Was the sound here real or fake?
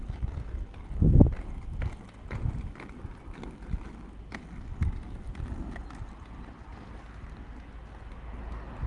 real